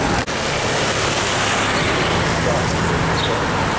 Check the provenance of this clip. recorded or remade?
recorded